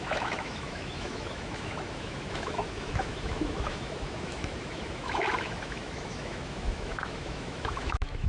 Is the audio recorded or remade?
remade